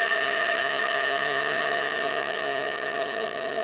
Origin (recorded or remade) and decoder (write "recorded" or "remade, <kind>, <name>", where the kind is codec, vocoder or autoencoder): remade, vocoder, HiFi-GAN